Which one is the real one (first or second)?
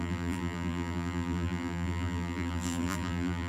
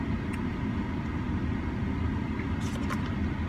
second